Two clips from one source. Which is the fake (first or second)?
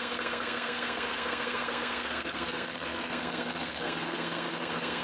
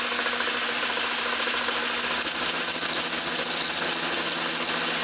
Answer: first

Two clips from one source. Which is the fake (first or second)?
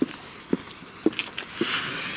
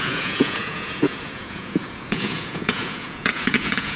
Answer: second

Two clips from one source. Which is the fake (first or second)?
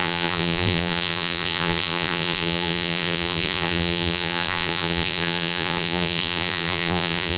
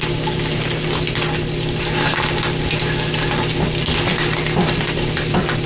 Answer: first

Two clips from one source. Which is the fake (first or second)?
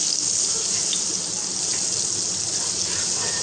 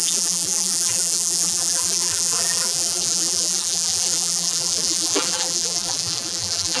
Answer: second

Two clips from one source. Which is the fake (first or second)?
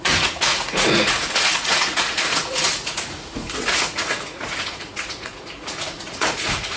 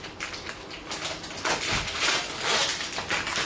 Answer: first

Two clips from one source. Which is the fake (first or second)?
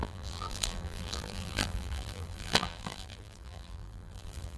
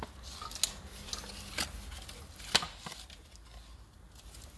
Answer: first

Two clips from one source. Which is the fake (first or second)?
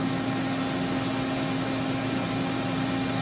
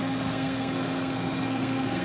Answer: second